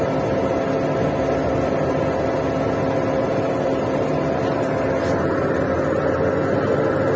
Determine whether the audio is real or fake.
real